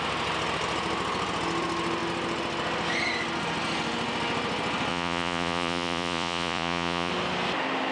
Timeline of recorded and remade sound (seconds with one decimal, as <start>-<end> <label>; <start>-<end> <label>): 0.0-4.9 recorded; 4.9-7.1 remade; 7.1-7.9 recorded